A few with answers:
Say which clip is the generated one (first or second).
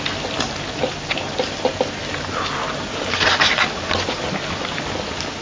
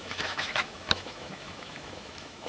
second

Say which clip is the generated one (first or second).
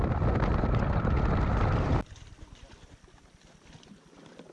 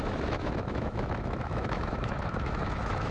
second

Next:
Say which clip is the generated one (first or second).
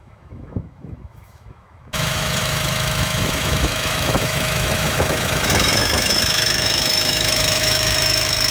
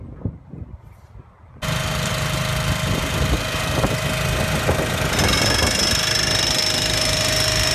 first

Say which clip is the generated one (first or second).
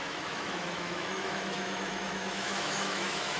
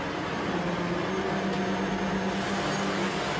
first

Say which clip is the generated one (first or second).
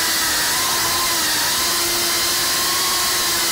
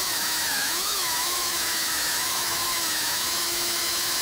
second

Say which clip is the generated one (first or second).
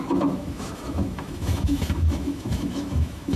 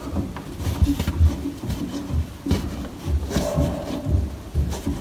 first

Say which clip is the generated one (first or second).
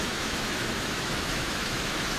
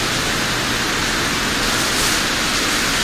first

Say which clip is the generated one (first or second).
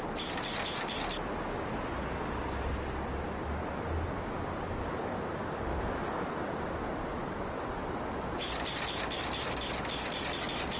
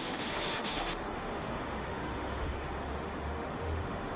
second